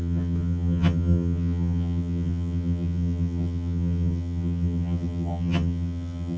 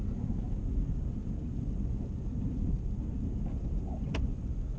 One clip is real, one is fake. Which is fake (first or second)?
first